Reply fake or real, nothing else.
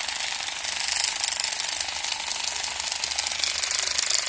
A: real